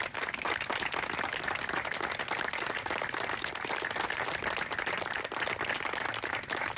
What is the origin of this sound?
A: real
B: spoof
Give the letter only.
A